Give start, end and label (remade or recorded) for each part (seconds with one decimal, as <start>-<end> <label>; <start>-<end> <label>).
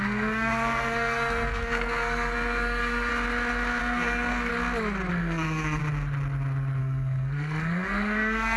0.0-3.1 remade; 3.1-3.8 recorded; 3.8-4.5 remade; 4.5-5.1 recorded; 5.1-5.8 remade; 5.8-6.8 recorded; 6.8-8.6 remade